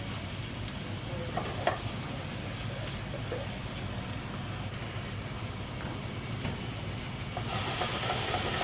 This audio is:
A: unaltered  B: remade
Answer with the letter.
A